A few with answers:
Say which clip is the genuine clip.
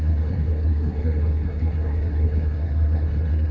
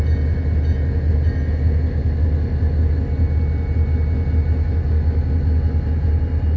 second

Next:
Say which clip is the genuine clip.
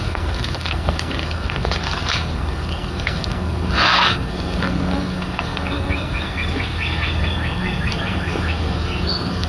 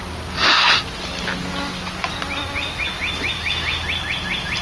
second